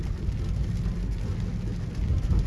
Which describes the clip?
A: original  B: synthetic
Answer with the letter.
A